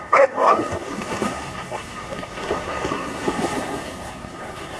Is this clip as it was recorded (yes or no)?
no